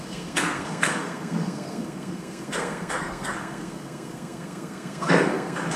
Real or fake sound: fake